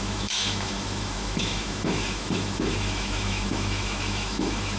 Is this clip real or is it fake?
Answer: fake